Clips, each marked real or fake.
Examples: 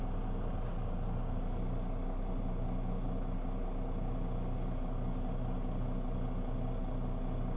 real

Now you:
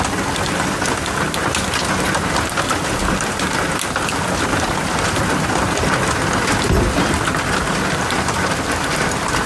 real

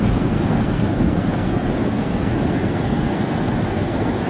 fake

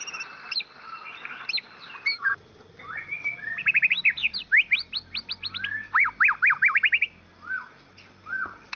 real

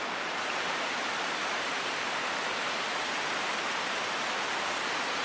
real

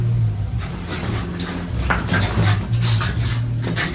real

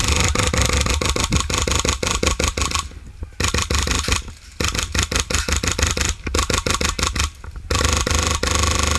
real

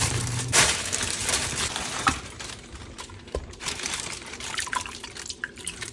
fake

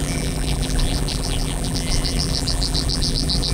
fake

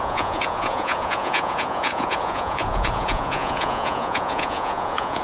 fake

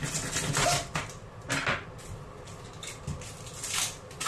real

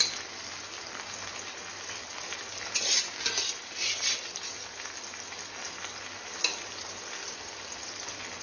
real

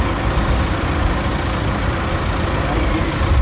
real